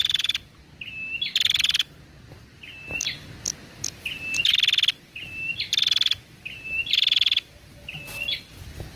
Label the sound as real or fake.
real